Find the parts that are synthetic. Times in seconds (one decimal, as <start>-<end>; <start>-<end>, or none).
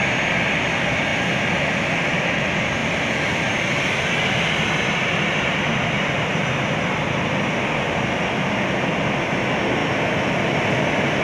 2.8-3.5; 9.8-10.4